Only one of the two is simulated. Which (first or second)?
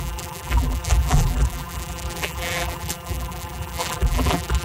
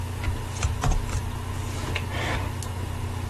first